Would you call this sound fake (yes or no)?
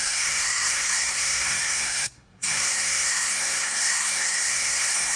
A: yes